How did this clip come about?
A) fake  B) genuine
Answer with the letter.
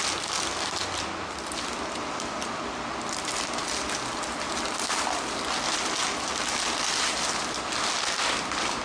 B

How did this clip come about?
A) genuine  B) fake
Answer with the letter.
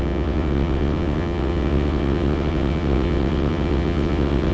B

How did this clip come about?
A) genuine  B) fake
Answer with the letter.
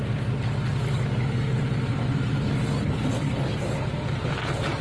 A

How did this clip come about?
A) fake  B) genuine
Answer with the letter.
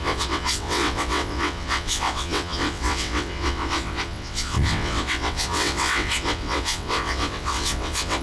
A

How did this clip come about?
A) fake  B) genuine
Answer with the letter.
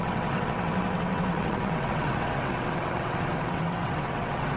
A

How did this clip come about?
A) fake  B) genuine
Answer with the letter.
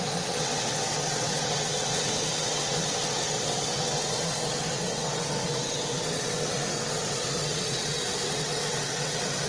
A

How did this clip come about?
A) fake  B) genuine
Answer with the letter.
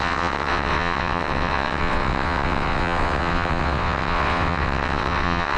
A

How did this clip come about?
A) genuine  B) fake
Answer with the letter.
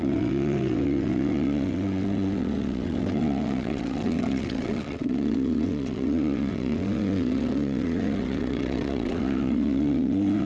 B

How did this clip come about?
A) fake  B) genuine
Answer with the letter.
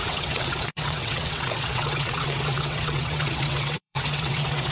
A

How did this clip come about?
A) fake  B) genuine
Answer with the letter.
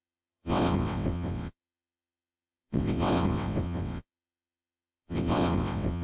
A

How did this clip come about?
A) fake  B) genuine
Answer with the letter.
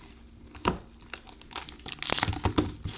B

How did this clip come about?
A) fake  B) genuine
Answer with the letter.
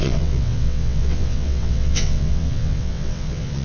A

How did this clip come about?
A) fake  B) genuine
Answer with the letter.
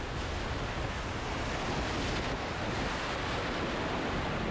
B